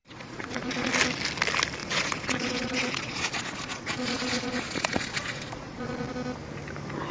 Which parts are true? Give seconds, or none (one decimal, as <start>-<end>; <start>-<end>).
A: 0.9-1.8; 6.1-7.1